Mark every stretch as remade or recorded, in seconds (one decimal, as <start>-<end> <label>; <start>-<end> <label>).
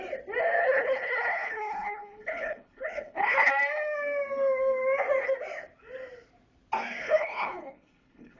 0.0-0.6 recorded; 0.6-3.5 remade; 3.5-7.0 recorded; 7.0-8.4 remade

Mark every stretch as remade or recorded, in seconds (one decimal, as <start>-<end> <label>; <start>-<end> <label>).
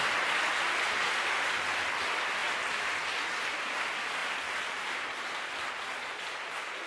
0.0-6.9 recorded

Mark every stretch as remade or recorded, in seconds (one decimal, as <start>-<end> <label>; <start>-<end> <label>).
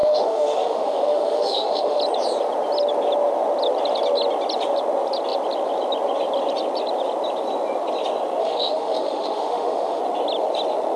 0.0-2.0 remade; 2.0-8.4 recorded; 8.4-10.0 remade; 10.0-11.0 recorded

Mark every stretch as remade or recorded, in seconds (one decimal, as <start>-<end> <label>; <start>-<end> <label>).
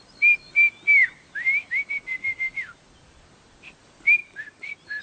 0.0-5.0 recorded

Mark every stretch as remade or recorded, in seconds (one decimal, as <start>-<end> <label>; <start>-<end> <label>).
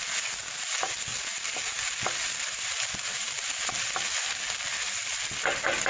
0.0-5.9 recorded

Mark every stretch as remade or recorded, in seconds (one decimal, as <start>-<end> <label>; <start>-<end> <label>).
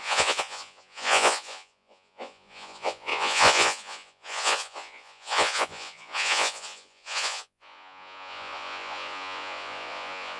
0.0-10.4 remade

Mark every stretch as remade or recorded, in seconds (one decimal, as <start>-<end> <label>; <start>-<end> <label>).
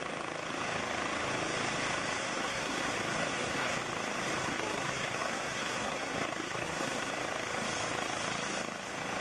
0.0-2.2 recorded; 2.2-2.9 remade; 2.9-3.3 recorded; 3.3-3.8 remade; 3.8-4.4 recorded; 4.4-7.1 remade; 7.1-9.2 recorded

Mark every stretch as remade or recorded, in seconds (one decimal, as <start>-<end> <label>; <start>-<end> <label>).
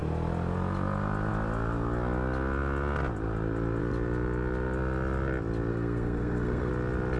0.0-5.7 recorded; 5.7-6.7 remade; 6.7-7.2 recorded